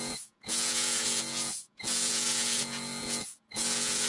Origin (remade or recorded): remade